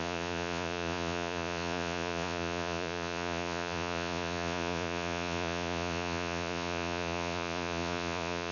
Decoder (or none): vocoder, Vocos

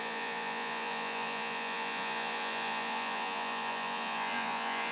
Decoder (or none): vocoder, Vocos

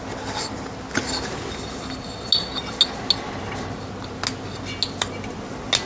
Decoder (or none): none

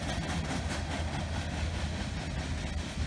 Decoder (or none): none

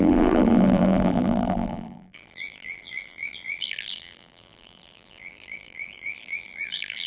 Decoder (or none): vocoder, BigVGAN v2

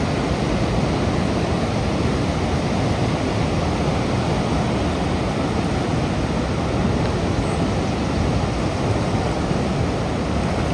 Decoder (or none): none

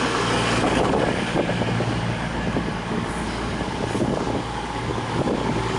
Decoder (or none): codec, DAC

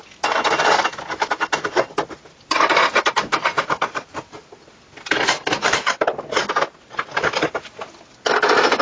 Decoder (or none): none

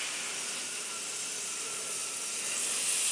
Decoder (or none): none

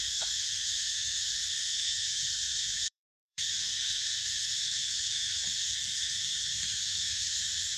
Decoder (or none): codec, SNAC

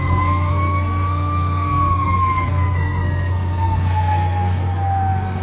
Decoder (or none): codec, SNAC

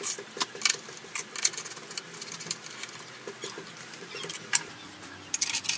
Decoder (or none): none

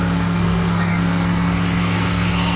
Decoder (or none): codec, SNAC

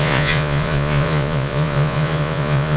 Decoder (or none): vocoder, Vocos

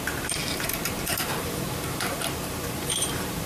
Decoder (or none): vocoder, BigVGAN v2